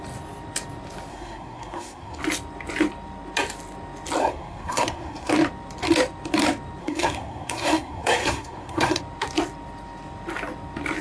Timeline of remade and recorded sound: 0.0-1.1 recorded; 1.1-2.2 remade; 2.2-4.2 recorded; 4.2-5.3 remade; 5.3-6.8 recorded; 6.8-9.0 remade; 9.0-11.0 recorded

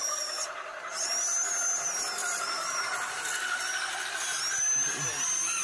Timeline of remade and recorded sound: 0.0-1.1 remade; 1.1-5.6 recorded

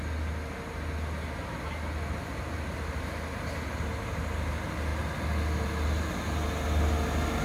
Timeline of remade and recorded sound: 0.0-7.4 recorded

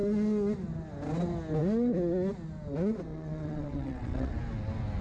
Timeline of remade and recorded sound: 0.0-3.1 recorded; 3.1-4.3 remade; 4.3-5.0 recorded

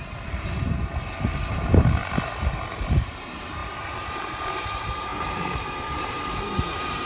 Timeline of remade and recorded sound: 0.0-2.0 remade; 2.0-2.7 recorded; 2.7-7.1 remade

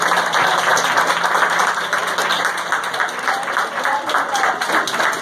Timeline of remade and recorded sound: 0.0-5.2 recorded

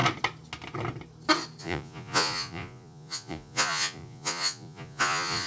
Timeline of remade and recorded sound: 0.0-1.6 recorded; 1.6-5.5 remade